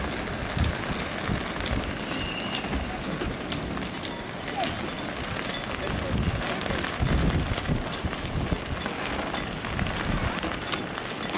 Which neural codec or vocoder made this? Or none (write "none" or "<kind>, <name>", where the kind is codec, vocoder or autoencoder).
none